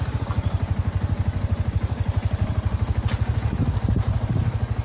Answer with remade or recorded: remade